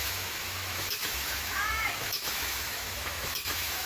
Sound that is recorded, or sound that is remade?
remade